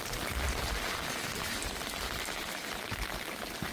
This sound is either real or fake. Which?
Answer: real